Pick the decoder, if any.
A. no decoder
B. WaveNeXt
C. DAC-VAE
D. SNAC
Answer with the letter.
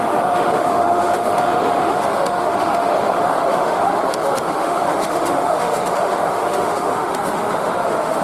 C